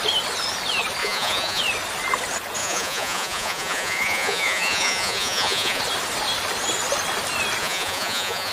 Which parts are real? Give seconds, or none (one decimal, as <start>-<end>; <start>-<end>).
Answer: 0.0-1.0; 1.6-2.6; 5.8-7.6